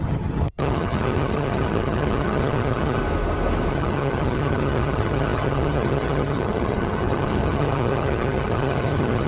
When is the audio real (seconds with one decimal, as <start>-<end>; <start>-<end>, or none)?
3.0-3.7